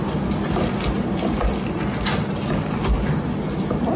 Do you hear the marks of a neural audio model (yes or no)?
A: no